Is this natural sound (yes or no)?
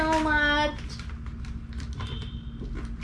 yes